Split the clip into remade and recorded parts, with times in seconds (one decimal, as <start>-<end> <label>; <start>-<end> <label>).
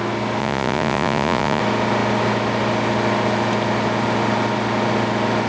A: 0.0-0.4 recorded; 0.4-1.6 remade; 1.6-5.5 recorded